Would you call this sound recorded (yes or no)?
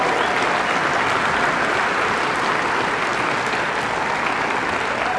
yes